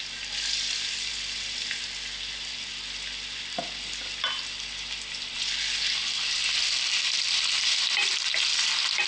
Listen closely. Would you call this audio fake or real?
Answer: real